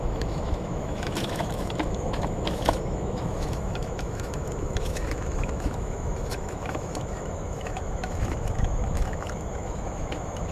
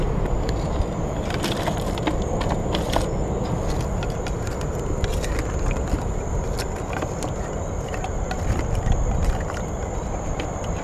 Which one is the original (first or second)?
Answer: second